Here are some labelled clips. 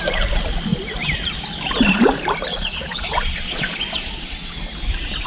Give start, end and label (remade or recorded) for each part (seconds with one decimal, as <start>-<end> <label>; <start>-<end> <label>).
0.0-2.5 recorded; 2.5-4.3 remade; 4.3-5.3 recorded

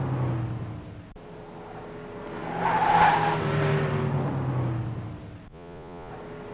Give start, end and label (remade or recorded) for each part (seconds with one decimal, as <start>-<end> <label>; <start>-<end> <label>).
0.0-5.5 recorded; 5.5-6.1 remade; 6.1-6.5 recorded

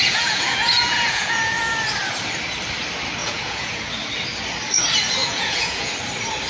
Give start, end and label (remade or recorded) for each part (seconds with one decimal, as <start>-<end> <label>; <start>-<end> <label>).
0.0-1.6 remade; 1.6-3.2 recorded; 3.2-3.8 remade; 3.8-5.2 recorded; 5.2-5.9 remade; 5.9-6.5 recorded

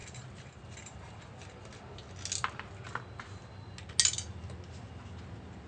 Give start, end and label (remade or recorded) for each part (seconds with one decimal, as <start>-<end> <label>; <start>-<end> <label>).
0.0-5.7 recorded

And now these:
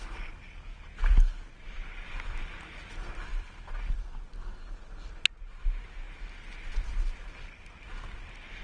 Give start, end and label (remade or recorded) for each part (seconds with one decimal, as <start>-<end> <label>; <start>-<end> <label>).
0.0-8.6 recorded

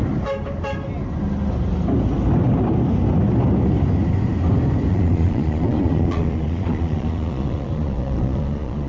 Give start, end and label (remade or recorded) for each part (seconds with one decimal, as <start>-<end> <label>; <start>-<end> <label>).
0.0-4.9 recorded; 4.9-8.9 remade